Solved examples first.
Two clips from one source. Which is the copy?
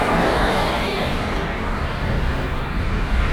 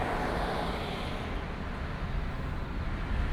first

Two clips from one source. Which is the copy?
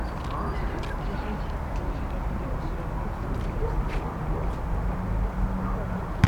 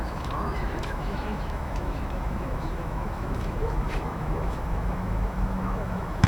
second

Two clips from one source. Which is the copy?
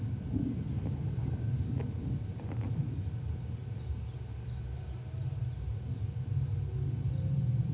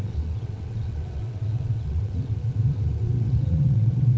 second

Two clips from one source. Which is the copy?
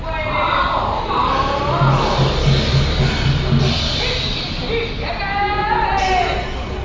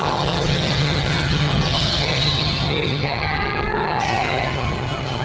second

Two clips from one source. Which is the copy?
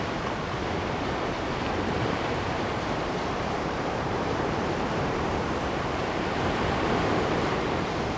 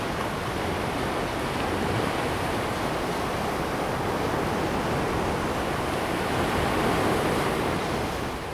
first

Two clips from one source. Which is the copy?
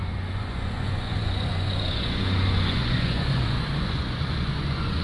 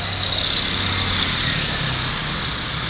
first